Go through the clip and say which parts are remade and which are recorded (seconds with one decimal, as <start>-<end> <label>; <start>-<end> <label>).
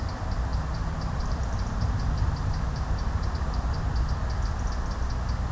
0.0-0.5 recorded; 0.5-3.8 remade; 3.8-5.5 recorded